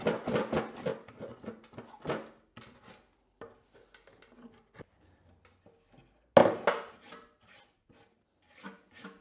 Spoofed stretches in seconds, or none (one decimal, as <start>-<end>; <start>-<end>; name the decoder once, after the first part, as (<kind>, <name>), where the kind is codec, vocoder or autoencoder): none